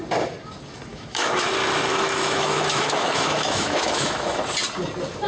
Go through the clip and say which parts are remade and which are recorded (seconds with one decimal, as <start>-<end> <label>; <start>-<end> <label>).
0.0-0.9 recorded; 0.9-1.5 remade; 1.5-1.9 recorded; 1.9-4.4 remade; 4.4-5.3 recorded